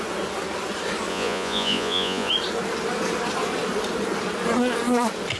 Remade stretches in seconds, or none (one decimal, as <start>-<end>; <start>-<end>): 1.1-2.3

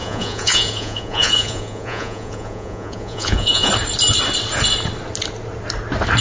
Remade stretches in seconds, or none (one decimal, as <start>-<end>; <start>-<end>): 0.0-3.7

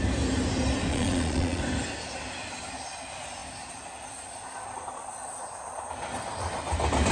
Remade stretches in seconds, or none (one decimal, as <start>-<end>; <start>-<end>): 0.9-1.6

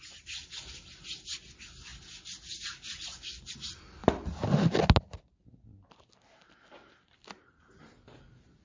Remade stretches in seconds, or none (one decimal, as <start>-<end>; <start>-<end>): none

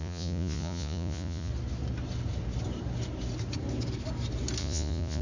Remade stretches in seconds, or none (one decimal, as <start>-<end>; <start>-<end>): 0.0-1.5; 4.6-5.2